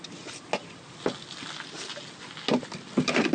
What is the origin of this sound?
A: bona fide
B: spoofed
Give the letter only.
A